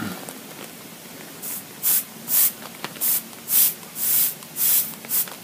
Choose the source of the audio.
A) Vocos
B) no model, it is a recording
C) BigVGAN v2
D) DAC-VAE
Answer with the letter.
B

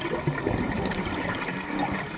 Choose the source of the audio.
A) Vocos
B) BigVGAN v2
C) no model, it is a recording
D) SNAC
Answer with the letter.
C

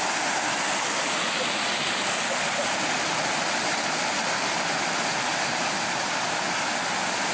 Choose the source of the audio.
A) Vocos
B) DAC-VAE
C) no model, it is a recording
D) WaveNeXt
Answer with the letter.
C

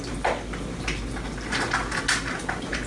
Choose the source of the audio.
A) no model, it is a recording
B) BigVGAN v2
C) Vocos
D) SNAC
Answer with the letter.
A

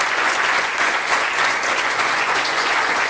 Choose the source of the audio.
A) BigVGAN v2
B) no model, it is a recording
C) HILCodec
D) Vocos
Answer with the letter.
D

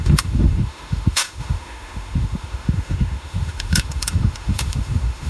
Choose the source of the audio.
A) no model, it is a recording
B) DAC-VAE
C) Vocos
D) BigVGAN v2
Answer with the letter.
B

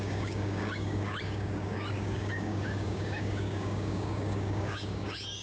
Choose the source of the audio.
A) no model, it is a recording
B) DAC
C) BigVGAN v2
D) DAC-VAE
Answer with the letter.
B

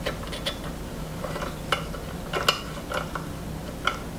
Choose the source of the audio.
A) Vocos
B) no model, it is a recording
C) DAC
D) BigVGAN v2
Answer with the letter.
B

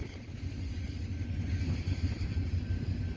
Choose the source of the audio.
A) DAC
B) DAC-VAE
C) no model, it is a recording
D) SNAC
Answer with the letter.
C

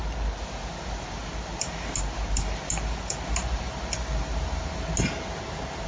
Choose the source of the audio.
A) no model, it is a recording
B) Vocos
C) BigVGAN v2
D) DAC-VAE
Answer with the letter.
A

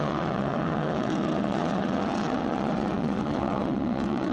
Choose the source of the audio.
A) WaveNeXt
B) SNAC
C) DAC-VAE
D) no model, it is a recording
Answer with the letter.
A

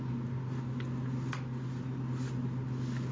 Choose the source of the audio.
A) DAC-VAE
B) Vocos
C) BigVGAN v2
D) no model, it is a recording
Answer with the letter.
D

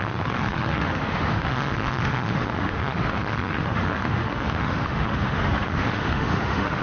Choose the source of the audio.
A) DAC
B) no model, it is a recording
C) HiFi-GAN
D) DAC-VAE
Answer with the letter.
D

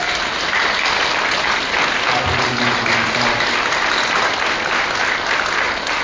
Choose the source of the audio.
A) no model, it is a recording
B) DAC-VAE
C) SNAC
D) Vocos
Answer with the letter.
A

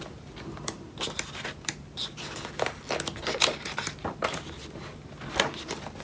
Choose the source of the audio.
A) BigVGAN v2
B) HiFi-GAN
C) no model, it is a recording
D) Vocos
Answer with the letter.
C